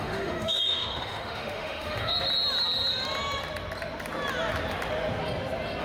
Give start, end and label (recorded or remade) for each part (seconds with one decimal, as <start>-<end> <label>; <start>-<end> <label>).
0.0-2.1 remade; 2.1-5.8 recorded